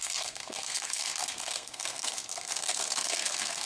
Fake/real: fake